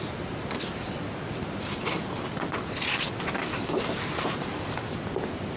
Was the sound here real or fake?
real